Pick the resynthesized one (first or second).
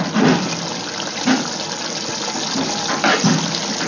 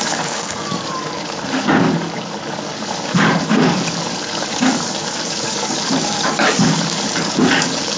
second